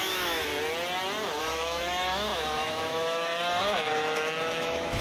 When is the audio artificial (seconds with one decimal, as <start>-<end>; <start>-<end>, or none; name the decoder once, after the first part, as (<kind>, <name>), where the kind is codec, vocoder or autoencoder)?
0.0-0.5 (autoencoder, DAC-VAE); 1.4-5.0